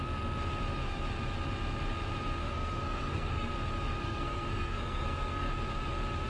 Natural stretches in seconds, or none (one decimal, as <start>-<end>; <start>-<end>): 0.0-2.4; 3.5-4.0; 5.5-6.3

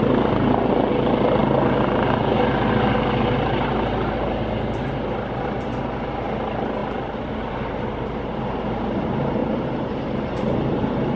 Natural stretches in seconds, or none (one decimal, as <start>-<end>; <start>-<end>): 0.0-9.4; 9.9-11.2